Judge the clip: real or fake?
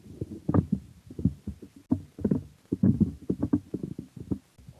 real